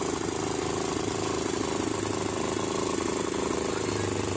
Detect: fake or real real